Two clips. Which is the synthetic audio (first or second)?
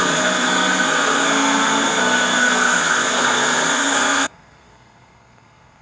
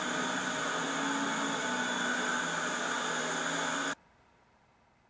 first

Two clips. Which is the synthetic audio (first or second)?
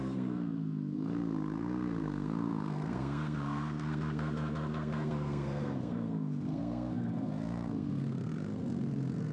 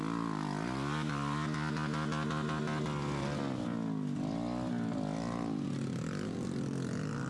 first